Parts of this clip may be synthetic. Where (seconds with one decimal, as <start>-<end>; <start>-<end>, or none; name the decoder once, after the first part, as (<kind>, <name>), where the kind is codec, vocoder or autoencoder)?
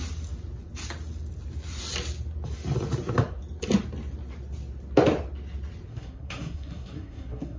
5.9-7.6 (codec, SNAC)